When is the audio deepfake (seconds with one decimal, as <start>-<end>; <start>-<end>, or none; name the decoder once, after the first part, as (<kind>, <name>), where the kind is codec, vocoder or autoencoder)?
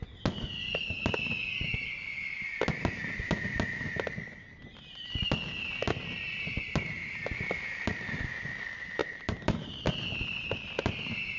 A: 9.0-9.8 (vocoder, BigVGAN v2)